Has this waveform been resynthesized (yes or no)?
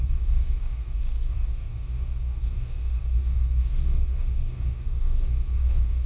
yes